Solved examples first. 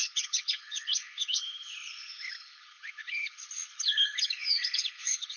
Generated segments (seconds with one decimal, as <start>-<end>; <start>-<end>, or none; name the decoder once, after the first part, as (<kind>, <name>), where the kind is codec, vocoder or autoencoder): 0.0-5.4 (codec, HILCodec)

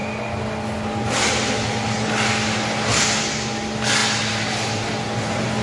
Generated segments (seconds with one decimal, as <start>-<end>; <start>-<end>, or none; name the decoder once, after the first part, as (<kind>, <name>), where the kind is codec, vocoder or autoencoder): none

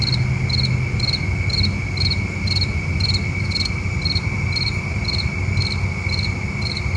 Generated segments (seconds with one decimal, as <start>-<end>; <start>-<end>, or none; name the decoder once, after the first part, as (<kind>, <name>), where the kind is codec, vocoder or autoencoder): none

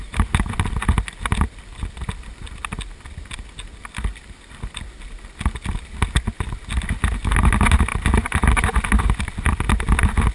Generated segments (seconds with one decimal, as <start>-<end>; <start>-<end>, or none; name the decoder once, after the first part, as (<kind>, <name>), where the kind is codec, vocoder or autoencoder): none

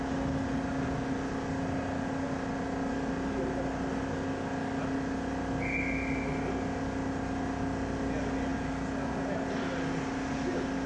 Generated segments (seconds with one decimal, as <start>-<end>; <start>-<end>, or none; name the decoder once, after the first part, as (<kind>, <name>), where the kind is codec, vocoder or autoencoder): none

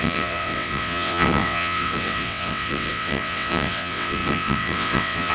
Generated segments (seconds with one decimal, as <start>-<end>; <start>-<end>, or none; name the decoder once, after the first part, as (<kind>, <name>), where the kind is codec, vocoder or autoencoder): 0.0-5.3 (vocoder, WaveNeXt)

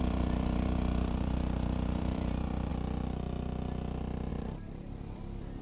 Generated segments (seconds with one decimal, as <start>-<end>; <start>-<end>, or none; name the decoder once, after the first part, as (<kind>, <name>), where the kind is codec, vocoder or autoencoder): 0.0-2.7 (vocoder, BigVGAN v2); 4.3-5.6

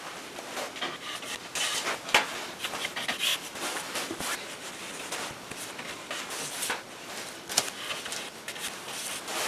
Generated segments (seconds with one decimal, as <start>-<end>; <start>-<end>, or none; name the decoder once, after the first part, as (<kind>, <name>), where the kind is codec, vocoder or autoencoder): 3.3-4.7 (vocoder, BigVGAN v2)